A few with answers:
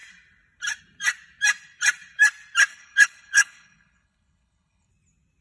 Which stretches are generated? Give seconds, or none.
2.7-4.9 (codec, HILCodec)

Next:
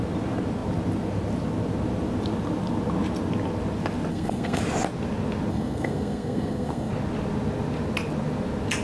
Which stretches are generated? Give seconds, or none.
4.1-4.6 (codec, SNAC); 5.5-6.9

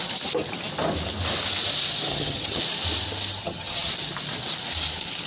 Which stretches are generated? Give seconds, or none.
2.1-2.6 (vocoder, HiFi-GAN); 3.4-3.9

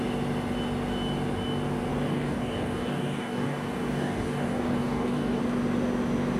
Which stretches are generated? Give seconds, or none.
1.9-5.4 (codec, DAC)

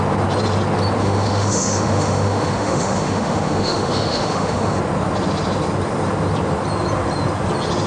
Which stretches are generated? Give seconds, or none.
1.0-4.8 (autoencoder, DAC-VAE)